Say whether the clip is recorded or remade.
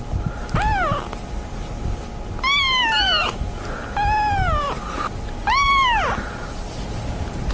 recorded